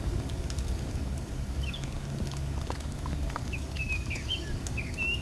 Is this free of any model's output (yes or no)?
no